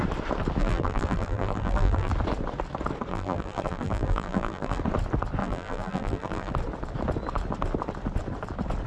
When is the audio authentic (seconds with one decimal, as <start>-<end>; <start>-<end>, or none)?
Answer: 0.0-0.6; 2.1-3.1; 4.8-5.4; 6.5-8.9